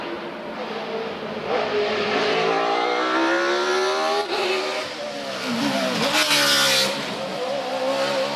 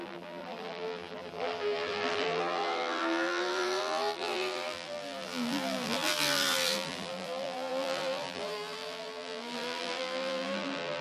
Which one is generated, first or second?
second